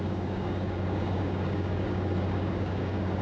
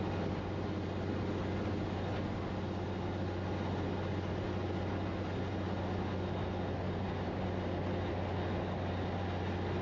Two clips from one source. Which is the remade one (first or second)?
first